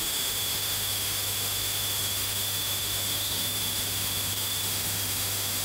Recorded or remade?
remade